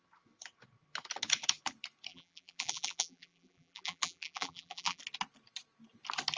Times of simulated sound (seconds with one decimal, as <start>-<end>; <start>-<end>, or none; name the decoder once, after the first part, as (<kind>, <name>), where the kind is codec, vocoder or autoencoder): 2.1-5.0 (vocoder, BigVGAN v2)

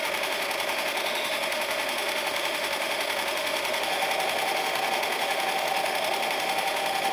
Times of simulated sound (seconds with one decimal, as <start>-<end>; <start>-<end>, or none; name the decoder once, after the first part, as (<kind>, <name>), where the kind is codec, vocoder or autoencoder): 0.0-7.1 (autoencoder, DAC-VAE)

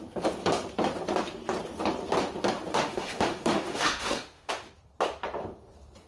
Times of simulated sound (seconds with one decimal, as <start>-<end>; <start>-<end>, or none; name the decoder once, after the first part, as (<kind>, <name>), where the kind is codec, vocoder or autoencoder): 2.7-4.5 (autoencoder, DAC-VAE)

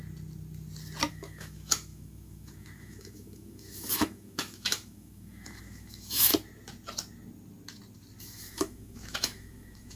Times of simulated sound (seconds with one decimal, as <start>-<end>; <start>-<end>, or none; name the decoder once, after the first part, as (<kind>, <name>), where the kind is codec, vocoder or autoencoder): 1.1-6.3 (autoencoder, DAC-VAE); 8.2-10.0